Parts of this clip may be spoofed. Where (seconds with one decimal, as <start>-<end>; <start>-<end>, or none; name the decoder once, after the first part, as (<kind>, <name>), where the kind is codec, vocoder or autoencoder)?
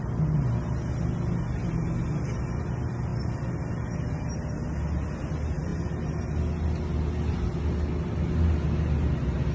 none